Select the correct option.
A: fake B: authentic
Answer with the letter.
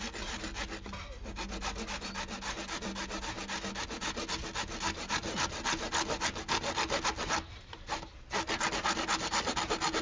B